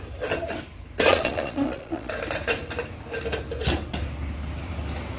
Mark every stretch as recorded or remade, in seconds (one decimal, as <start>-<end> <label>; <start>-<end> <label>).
0.0-1.1 recorded; 1.1-2.1 remade; 2.1-5.2 recorded